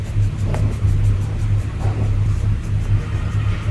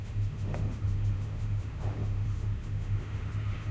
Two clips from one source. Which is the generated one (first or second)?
second